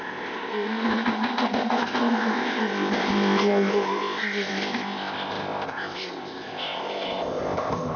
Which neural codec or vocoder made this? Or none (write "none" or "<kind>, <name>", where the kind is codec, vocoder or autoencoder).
codec, ZipCodec